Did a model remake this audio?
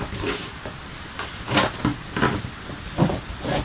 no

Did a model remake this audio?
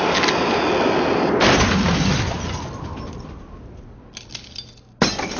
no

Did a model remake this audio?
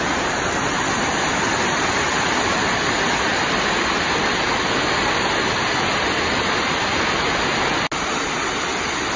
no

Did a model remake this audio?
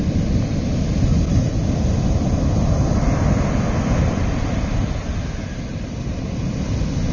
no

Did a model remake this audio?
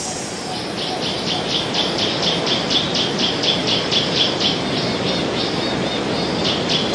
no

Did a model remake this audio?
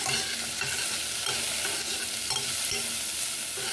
no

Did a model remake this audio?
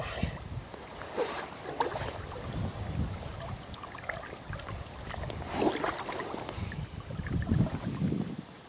no